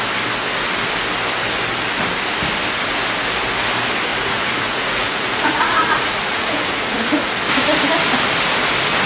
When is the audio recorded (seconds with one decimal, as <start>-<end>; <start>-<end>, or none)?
0.0-4.1; 7.3-9.1